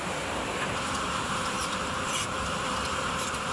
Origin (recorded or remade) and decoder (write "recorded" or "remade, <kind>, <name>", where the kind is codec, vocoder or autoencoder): remade, vocoder, BigVGAN v2